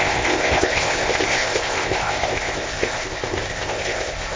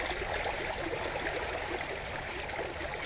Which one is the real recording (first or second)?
second